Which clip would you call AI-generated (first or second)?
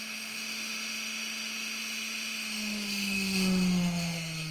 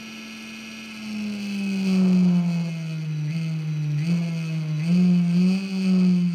first